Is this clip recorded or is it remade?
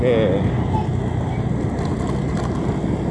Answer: recorded